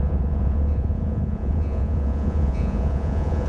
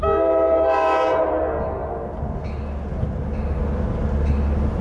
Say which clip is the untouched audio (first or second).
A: second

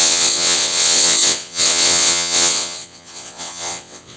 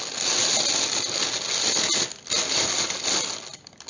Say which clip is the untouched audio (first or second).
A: second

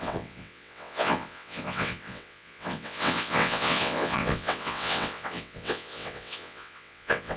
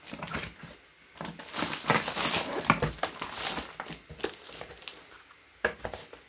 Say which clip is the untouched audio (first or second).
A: second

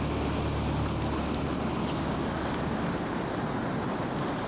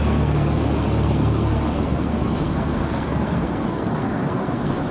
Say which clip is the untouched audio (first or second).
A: first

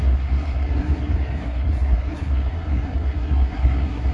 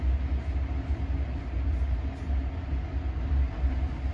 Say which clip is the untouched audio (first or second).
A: second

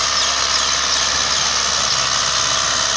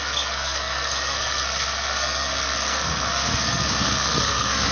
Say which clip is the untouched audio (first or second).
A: first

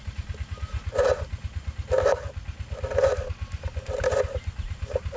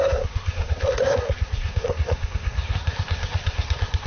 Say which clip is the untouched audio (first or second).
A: first